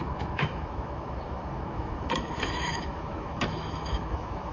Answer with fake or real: fake